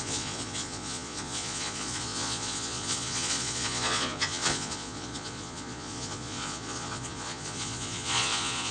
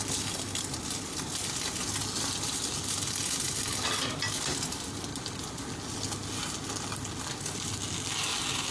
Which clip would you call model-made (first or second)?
first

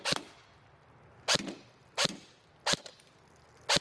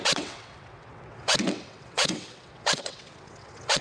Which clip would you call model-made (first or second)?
second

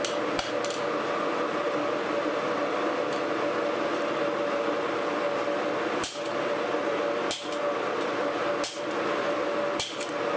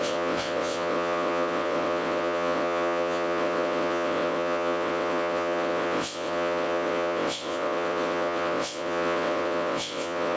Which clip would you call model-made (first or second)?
second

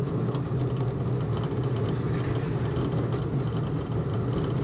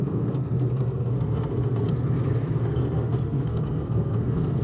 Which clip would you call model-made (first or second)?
second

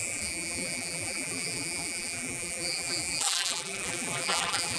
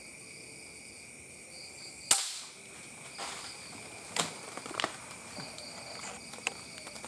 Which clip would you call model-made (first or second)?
first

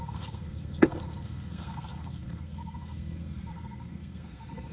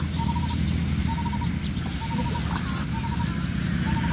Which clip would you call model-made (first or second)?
first